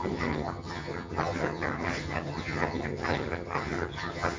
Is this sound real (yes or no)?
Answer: no